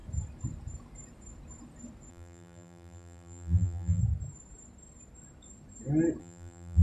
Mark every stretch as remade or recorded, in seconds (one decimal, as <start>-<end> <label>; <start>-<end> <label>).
0.0-2.1 recorded; 2.1-4.0 remade; 4.0-6.2 recorded; 6.2-6.8 remade